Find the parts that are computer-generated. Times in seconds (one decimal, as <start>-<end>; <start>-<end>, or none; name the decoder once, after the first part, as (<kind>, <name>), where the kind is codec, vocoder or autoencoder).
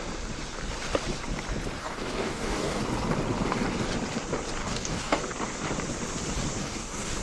1.8-2.8 (codec, DAC); 4.6-5.2; 6.6-7.2